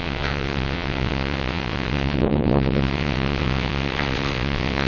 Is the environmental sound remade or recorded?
remade